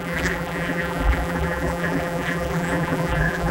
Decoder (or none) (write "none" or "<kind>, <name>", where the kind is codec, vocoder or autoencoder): vocoder, BigVGAN v2